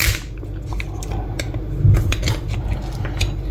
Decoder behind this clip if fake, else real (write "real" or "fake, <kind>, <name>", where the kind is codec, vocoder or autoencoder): real